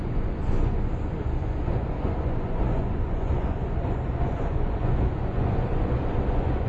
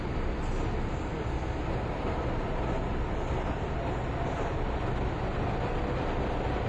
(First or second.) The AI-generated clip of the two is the first